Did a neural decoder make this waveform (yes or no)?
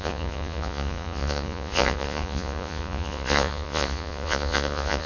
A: yes